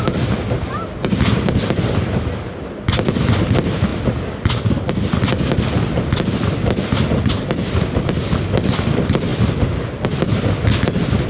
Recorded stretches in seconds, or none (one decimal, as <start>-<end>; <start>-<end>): 0.0-11.3